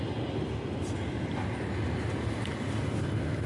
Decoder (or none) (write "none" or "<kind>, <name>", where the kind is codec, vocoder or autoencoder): none